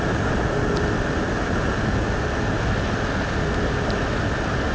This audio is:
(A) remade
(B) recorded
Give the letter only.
B